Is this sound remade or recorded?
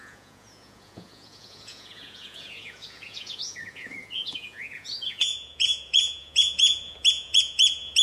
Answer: remade